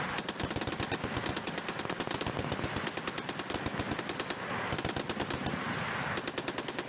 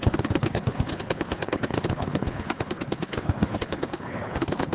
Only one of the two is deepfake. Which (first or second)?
second